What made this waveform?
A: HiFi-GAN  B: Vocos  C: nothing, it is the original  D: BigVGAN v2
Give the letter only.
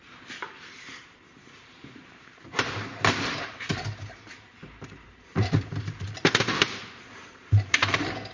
D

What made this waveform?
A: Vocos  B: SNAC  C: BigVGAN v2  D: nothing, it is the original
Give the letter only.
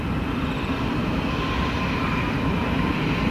D